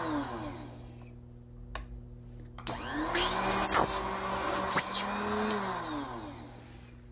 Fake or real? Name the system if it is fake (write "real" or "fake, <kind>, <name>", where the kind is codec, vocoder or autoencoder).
real